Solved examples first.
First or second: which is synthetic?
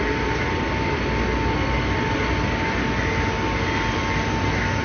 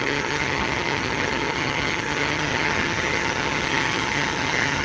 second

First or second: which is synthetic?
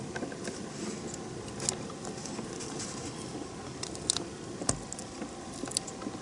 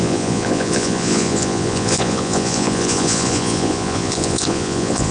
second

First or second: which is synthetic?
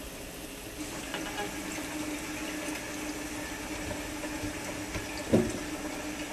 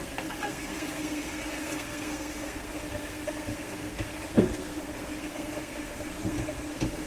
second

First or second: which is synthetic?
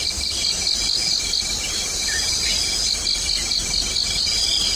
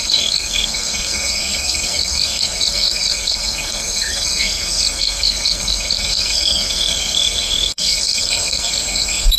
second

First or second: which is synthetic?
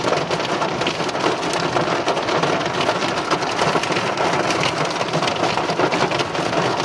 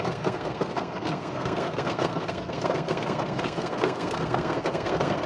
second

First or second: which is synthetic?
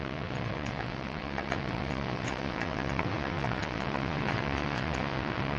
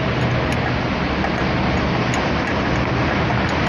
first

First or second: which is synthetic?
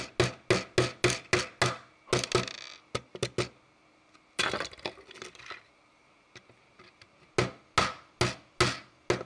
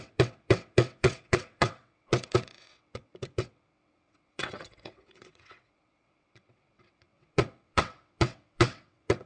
second